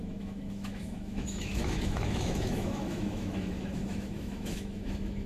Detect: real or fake fake